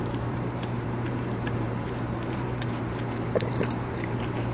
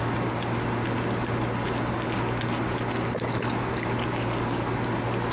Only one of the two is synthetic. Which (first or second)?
first